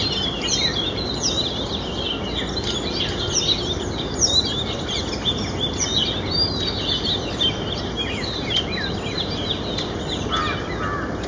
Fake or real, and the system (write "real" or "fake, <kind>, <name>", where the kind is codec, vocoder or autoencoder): real